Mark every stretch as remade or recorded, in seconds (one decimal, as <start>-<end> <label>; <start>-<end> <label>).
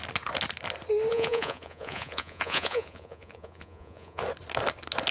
0.0-1.1 recorded; 1.1-4.2 remade; 4.2-5.1 recorded